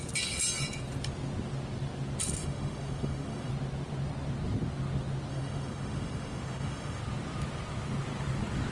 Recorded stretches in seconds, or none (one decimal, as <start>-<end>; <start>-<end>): 0.0-2.4; 3.5-5.3; 7.0-8.7

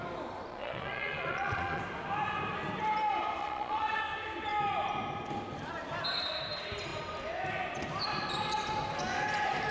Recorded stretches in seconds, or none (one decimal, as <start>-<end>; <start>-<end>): 0.0-0.5; 1.8-3.4; 4.0-9.7

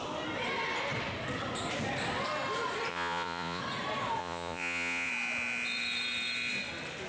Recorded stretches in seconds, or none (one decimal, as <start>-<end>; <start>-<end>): 0.0-2.9; 3.6-4.2; 5.1-7.1

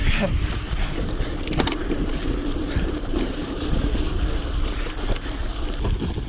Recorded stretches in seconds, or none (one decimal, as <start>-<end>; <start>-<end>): 0.0-1.8; 4.4-6.3